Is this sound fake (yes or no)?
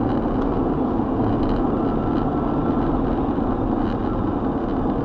no